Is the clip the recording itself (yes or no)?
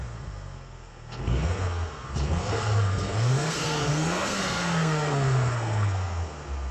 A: no